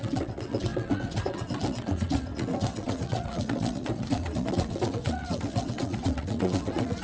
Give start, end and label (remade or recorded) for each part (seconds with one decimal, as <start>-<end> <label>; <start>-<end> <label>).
0.0-7.0 remade

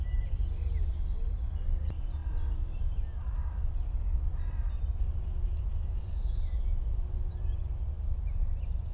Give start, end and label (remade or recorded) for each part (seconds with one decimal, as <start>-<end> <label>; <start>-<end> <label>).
0.0-8.9 recorded

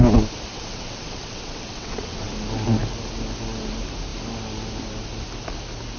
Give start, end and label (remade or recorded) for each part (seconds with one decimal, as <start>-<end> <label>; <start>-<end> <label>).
0.0-0.5 recorded; 0.5-2.3 remade; 2.3-6.0 recorded